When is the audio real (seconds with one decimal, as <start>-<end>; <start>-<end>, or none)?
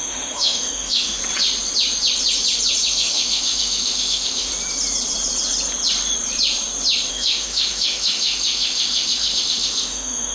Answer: 1.2-2.9; 4.5-7.1